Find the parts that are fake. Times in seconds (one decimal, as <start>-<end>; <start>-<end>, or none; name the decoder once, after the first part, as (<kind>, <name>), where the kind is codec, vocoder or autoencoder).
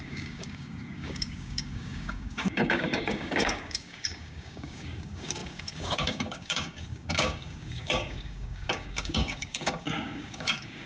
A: 0.0-10.9 (codec, DAC)